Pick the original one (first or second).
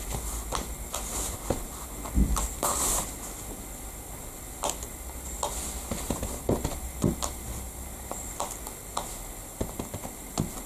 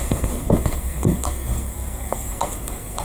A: first